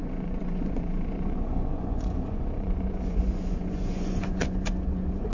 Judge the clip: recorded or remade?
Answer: remade